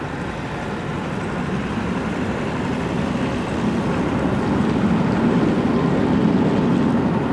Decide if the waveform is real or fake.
real